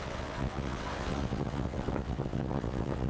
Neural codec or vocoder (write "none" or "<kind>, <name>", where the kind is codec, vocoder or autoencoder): vocoder, WaveNeXt